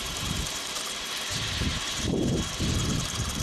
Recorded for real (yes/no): no